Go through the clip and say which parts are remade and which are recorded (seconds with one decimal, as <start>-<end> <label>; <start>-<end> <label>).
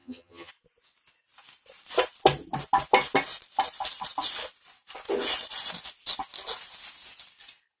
0.0-0.5 remade; 0.5-7.8 recorded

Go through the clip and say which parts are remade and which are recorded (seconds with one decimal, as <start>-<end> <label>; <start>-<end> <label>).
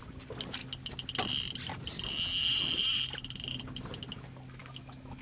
0.0-4.6 recorded; 4.6-5.2 remade